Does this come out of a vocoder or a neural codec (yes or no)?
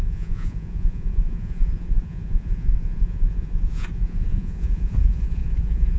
yes